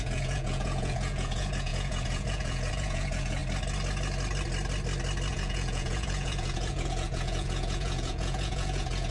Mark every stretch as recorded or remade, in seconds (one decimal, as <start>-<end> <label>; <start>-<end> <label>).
0.0-3.4 remade; 3.4-5.3 recorded; 5.3-9.1 remade